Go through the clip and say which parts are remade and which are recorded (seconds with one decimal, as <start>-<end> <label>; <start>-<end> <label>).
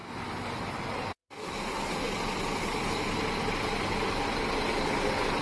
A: 0.0-5.4 recorded